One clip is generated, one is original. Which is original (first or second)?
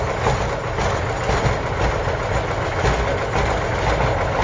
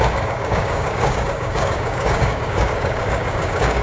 first